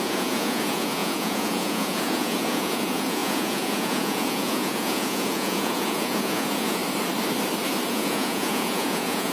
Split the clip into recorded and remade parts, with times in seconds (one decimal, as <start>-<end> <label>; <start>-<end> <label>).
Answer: 0.0-6.8 remade; 6.8-7.9 recorded; 7.9-9.3 remade